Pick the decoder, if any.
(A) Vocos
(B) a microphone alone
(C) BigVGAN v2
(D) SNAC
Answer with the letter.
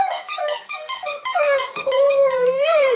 D